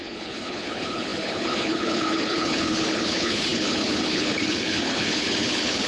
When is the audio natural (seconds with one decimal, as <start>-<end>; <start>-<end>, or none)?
none